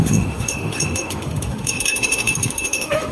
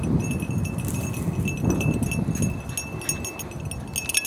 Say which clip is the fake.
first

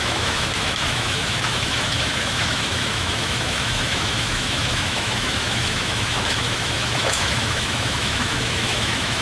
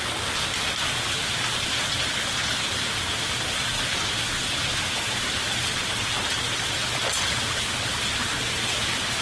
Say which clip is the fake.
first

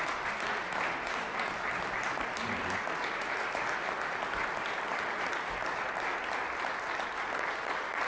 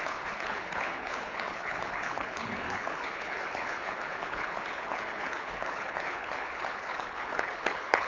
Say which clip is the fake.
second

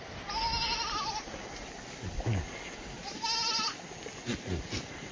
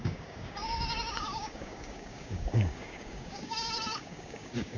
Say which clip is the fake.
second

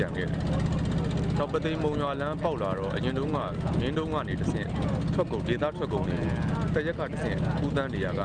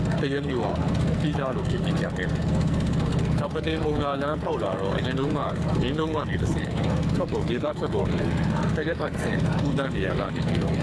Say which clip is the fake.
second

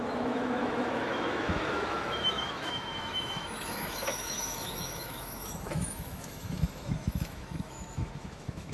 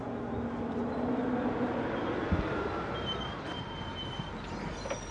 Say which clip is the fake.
first